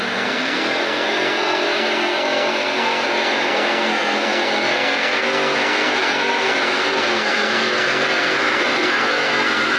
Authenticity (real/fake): fake